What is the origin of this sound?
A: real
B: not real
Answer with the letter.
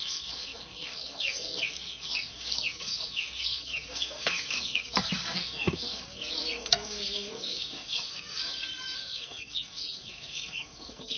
B